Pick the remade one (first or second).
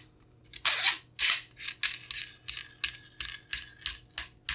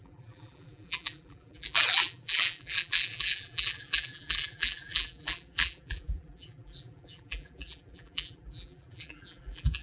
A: second